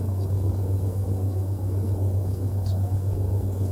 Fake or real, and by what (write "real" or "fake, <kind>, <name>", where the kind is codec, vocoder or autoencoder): fake, codec, SNAC